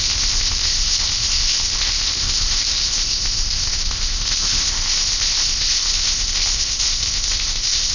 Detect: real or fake fake